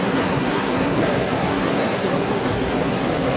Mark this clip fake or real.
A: fake